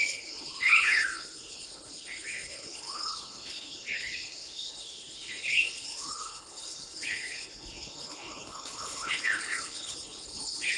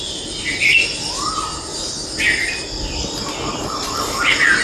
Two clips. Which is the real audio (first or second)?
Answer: second